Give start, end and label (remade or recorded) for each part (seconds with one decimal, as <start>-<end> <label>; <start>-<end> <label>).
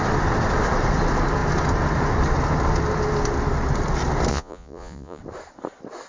0.0-4.3 recorded; 4.3-5.2 remade; 5.2-6.1 recorded